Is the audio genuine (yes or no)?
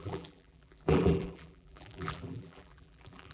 no